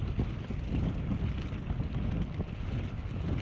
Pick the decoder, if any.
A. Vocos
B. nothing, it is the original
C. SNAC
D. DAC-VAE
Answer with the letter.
B